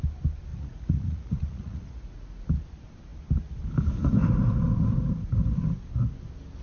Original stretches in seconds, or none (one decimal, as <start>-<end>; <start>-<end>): 0.0-0.5; 2.5-6.6